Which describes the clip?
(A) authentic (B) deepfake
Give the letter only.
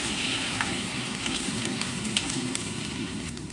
B